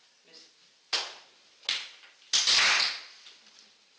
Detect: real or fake real